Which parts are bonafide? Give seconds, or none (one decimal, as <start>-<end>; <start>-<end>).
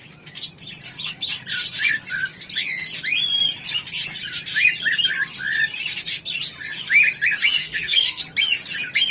0.0-7.6; 8.2-9.1